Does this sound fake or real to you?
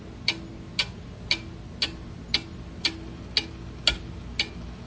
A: real